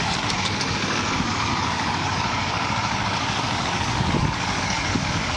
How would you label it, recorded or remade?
remade